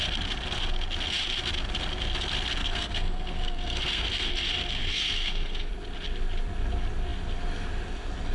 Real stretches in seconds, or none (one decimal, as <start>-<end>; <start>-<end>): 0.0-2.6; 4.3-4.8; 5.7-8.3